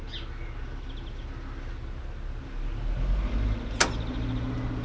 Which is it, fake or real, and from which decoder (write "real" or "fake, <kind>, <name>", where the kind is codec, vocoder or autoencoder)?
real